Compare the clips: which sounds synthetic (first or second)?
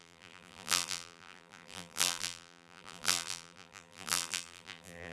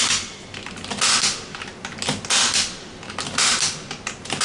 first